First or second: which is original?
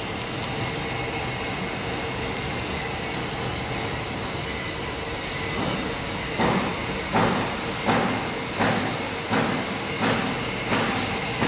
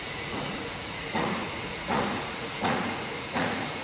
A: first